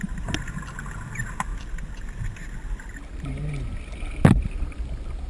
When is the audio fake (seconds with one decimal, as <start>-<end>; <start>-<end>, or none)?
none